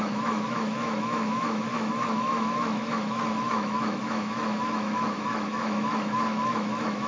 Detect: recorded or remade remade